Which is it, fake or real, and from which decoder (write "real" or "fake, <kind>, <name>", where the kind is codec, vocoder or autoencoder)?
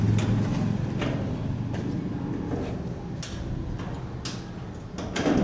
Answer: real